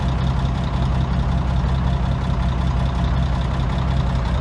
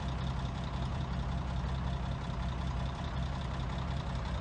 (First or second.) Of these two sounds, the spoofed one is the second